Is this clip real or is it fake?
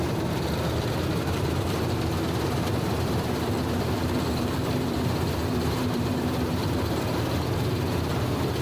fake